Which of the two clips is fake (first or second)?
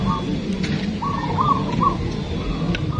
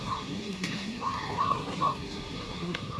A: second